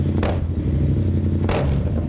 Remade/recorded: recorded